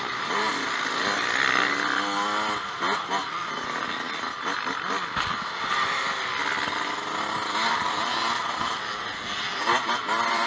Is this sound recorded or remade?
recorded